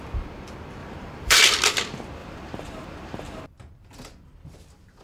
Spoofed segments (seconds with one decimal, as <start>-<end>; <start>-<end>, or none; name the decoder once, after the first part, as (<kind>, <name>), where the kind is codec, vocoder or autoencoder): 0.8-1.4 (vocoder, BigVGAN v2); 2.2-3.4